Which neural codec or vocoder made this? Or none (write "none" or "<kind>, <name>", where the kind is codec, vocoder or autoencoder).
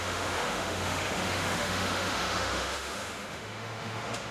autoencoder, DAC-VAE